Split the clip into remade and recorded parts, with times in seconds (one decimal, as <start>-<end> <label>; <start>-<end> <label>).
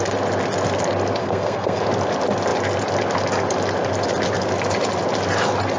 0.0-1.2 recorded; 1.2-1.8 remade; 1.8-5.8 recorded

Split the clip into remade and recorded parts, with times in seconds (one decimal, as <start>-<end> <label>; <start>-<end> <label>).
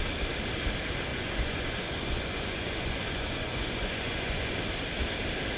0.0-1.1 recorded; 1.1-4.5 remade; 4.5-5.6 recorded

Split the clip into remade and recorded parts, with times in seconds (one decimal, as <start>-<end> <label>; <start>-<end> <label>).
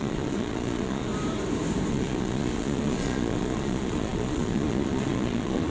0.0-1.1 remade; 1.1-1.9 recorded; 1.9-5.7 remade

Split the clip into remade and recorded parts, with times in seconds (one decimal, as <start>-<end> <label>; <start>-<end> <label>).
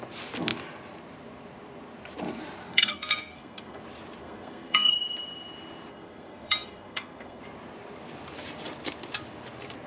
0.0-2.7 recorded; 2.7-3.8 remade; 3.8-4.2 recorded; 4.2-4.9 remade; 4.9-5.9 recorded; 5.9-7.4 remade; 7.4-9.9 recorded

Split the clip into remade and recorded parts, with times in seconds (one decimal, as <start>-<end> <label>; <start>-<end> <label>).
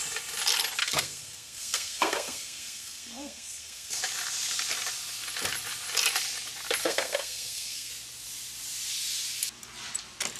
0.0-0.8 recorded; 0.8-4.0 remade; 4.0-6.8 recorded; 6.8-7.9 remade; 7.9-10.4 recorded